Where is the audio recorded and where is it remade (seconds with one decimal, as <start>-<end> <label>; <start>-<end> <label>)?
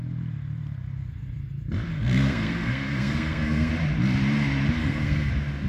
0.0-1.9 recorded; 1.9-3.7 remade; 3.7-4.8 recorded; 4.8-5.3 remade; 5.3-5.7 recorded